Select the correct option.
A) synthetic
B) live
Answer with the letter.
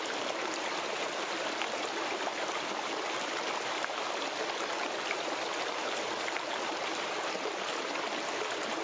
B